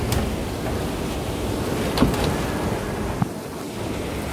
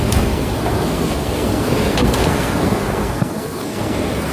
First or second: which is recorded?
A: first